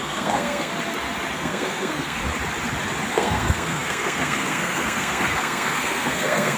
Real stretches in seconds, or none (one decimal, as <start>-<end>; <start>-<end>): 0.7-1.3; 2.2-3.1